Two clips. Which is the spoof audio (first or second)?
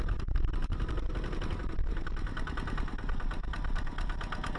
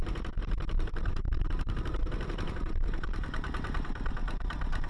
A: second